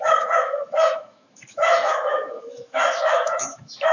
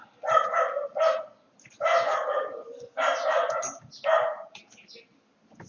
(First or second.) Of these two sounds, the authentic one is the second